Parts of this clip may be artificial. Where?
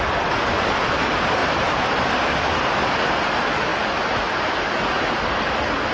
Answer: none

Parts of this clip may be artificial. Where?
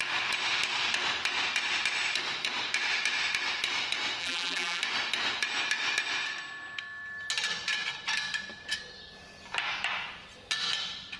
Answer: 4.2-4.8 (vocoder, BigVGAN v2)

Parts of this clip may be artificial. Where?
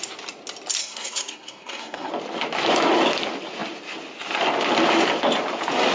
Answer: 0.8-2.1 (codec, SNAC)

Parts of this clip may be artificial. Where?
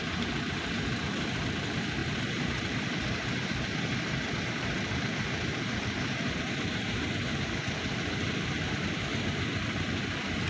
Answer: 2.0-7.1 (vocoder, BigVGAN v2)